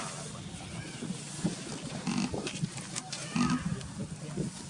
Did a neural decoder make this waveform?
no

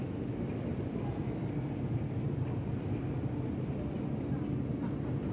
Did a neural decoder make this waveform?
no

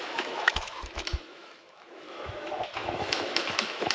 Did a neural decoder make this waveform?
yes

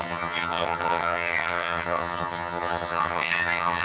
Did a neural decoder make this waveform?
yes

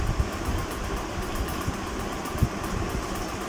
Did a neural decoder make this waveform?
no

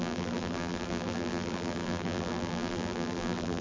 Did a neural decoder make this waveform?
yes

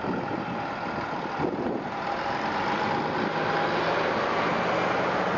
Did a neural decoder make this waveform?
no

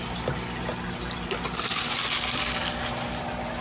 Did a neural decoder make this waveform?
no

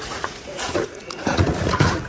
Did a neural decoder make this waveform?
yes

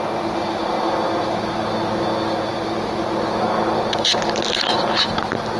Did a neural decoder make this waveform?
no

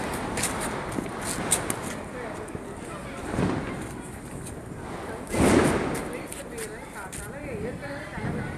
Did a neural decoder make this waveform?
no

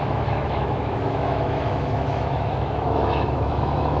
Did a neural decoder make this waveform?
yes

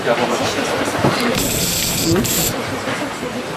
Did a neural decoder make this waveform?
yes